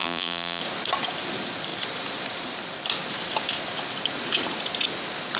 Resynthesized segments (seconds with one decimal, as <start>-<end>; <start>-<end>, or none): 0.0-0.6